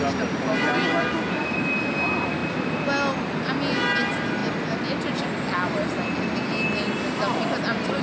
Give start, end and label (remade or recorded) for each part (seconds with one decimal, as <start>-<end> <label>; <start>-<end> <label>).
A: 0.0-8.0 recorded